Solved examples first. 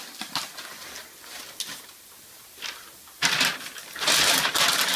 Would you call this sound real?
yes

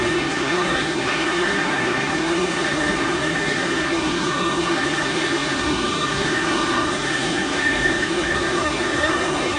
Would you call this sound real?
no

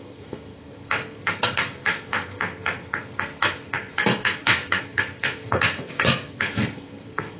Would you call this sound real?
no